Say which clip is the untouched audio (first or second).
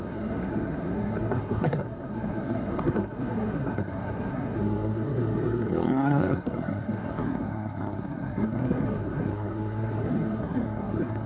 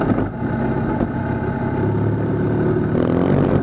second